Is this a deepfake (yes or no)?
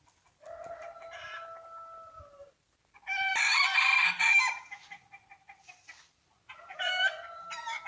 no